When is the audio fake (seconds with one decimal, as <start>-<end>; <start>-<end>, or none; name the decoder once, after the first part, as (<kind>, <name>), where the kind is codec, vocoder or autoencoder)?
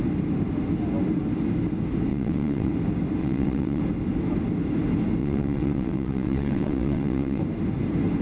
2.1-2.7 (vocoder, WaveNeXt); 3.2-3.8; 5.2-7.4